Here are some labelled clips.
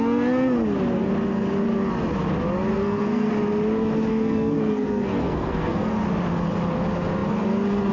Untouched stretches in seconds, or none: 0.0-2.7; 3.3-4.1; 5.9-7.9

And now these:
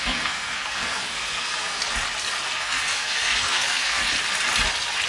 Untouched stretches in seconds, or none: 1.8-2.6; 4.0-5.1

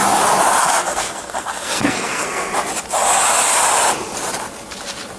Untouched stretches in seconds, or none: 0.0-0.6; 2.5-5.2